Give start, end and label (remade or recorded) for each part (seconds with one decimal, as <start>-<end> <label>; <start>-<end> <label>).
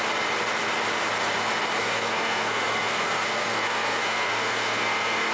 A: 0.0-1.8 recorded; 1.8-5.3 remade